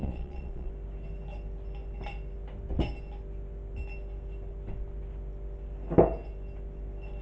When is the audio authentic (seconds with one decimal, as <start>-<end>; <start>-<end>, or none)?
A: 0.7-7.2